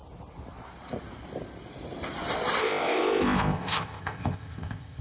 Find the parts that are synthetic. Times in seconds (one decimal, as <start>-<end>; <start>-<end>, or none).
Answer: 2.6-5.0